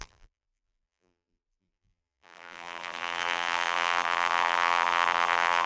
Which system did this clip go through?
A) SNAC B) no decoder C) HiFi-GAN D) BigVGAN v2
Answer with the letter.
D